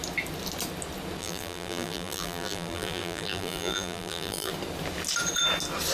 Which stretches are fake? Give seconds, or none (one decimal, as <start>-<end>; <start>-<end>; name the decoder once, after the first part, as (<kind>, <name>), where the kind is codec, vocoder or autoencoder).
1.2-4.5 (vocoder, BigVGAN v2)